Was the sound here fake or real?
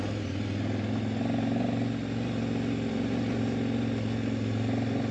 real